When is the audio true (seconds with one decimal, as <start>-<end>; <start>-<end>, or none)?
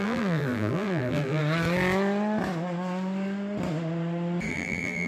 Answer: 1.4-4.5